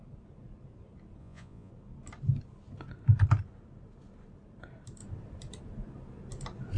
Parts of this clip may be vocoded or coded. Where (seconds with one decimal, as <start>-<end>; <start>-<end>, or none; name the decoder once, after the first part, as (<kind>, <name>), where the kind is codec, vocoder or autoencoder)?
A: 1.2-1.7 (vocoder, Vocos)